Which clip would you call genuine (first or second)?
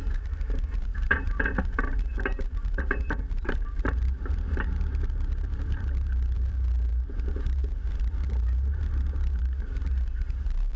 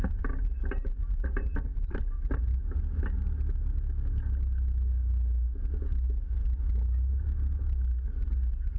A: second